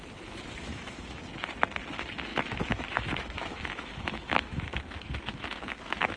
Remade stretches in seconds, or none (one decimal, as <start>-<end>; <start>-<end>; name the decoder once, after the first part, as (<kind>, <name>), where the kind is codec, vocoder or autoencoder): 0.7-1.2 (autoencoder, DAC-VAE); 2.3-6.2